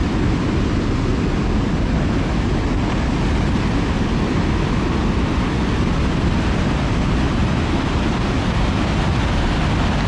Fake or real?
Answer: real